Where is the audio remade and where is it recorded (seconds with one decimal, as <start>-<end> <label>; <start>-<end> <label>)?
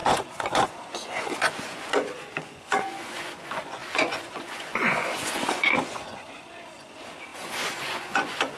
0.0-8.6 remade